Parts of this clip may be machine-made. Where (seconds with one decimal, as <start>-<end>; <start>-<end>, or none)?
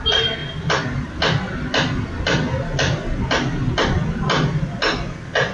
none